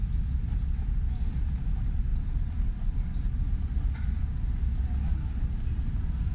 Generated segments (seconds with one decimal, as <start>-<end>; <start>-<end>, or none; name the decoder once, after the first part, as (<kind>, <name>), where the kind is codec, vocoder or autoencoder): none